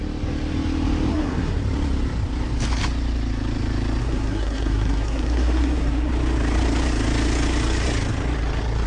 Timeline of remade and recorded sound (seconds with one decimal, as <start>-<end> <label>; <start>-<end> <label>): 0.0-1.1 recorded; 1.1-1.6 remade; 1.6-4.0 recorded; 4.0-6.1 remade; 6.1-8.9 recorded